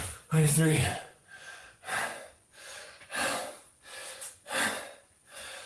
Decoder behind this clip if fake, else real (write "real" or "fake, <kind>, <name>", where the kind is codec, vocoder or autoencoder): fake, vocoder, Vocos